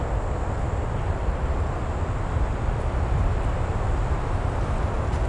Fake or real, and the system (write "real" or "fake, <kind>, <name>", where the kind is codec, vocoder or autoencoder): real